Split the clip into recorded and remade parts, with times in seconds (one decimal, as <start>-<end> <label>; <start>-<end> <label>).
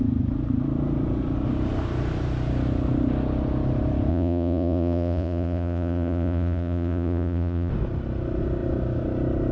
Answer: 0.0-4.1 recorded; 4.1-7.7 remade; 7.7-9.5 recorded